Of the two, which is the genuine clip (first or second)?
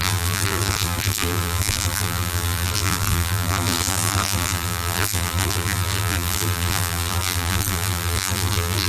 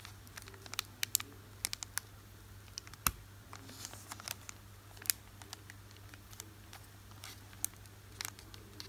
second